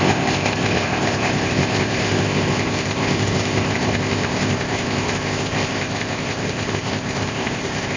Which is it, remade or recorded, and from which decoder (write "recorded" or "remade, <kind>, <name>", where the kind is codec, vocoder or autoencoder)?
remade, codec, ZipCodec